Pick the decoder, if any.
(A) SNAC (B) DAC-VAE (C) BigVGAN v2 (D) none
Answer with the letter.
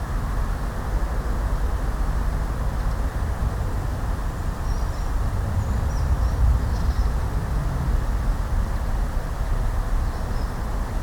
D